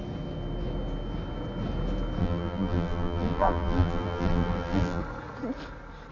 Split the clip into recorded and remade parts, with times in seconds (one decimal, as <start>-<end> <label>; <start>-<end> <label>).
0.0-2.2 recorded; 2.2-5.0 remade; 5.0-6.1 recorded